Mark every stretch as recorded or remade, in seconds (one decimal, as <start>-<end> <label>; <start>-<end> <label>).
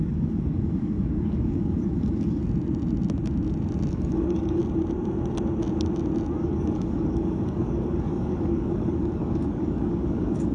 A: 0.0-2.4 remade; 2.4-3.9 recorded; 3.9-4.6 remade; 4.6-6.4 recorded; 6.4-10.5 remade